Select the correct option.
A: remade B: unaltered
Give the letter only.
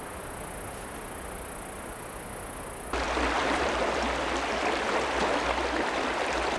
B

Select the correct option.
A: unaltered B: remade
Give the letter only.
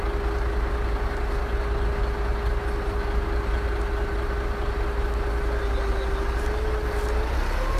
A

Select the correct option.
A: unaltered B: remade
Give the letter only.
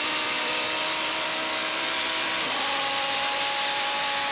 B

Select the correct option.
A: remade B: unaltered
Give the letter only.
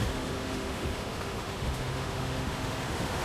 A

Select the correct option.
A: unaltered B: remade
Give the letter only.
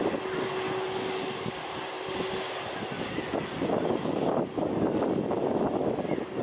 A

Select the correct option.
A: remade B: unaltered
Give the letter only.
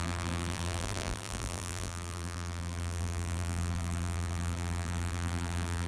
A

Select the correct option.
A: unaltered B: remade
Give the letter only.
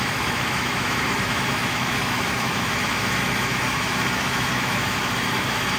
B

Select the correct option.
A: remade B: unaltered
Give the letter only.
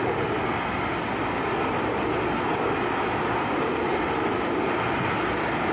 B